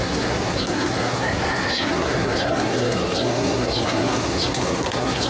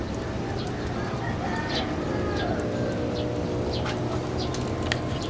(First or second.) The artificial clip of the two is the first